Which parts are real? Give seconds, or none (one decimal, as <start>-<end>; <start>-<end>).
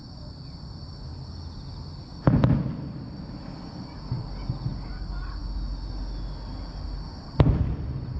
0.0-8.2